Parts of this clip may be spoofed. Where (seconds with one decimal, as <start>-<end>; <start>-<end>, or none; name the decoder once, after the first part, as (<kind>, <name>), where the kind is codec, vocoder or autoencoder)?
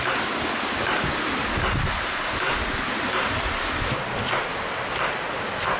none